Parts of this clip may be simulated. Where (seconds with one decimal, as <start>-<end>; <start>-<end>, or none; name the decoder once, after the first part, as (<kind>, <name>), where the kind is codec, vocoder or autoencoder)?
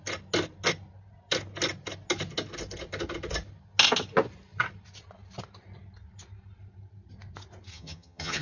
7.7-8.4 (vocoder, HiFi-GAN)